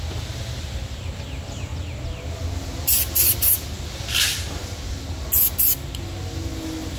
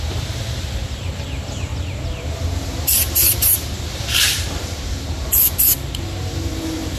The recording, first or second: first